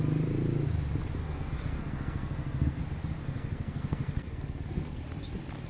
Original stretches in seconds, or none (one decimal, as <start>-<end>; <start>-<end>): 0.0-1.2; 2.8-3.2; 5.0-5.7